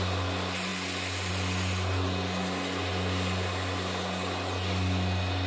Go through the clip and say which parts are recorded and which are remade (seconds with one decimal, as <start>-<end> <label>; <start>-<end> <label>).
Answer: 0.0-5.5 recorded